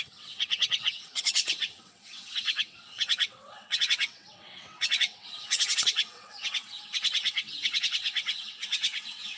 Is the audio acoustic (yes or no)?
no